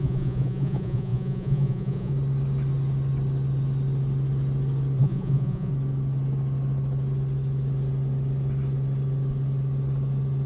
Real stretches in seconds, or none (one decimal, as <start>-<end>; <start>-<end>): 2.1-5.0; 5.7-10.5